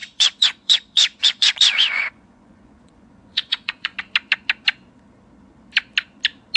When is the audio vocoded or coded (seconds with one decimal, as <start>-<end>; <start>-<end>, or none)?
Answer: 0.0-4.0